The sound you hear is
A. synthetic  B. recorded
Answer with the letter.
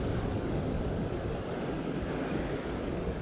A